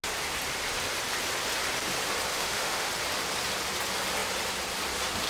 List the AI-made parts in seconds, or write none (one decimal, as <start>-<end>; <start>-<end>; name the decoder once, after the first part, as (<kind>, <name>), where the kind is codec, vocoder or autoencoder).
2.3-2.9 (autoencoder, DAC-VAE)